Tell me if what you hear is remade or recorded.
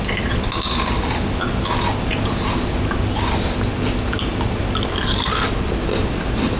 recorded